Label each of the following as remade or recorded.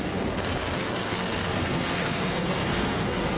remade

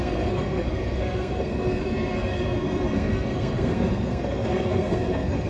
remade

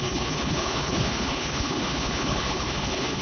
remade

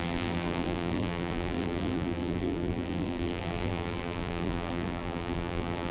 remade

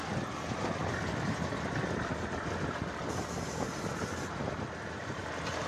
recorded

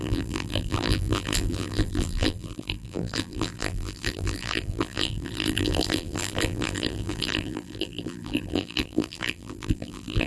remade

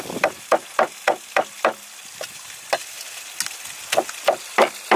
recorded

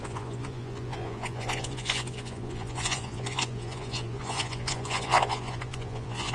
remade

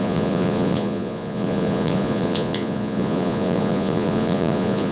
remade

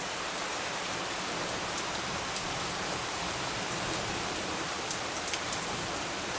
remade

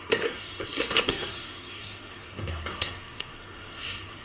remade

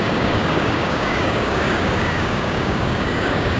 remade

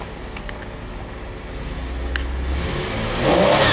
recorded